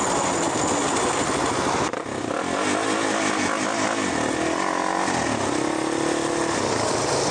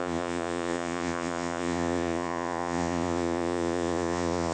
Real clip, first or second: first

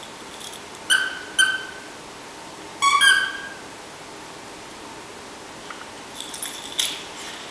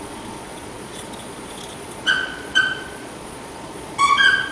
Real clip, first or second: first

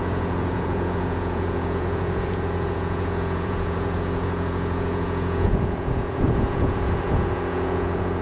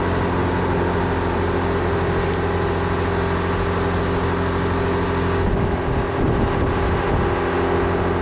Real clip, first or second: second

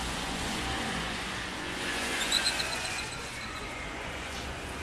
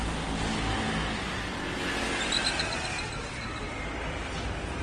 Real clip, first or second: second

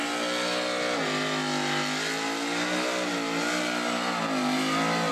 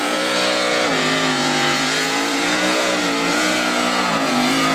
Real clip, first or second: first